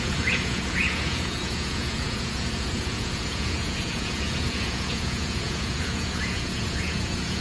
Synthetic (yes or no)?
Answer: yes